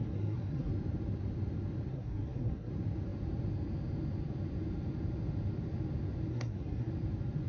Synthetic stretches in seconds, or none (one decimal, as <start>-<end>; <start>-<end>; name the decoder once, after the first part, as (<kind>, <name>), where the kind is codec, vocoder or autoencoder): 0.0-0.7 (codec, SNAC); 1.9-2.7; 6.3-6.9